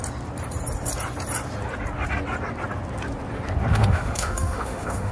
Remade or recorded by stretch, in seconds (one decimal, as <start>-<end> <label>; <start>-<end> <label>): 0.0-3.7 recorded; 3.7-5.1 remade